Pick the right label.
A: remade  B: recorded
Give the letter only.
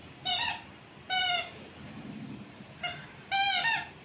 B